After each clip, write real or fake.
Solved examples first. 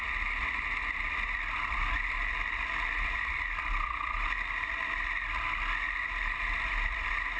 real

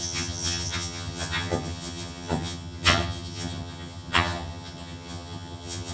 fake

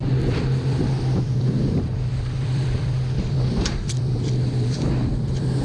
fake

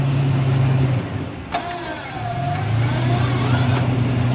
real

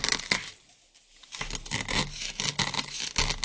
real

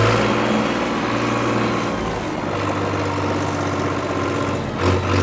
real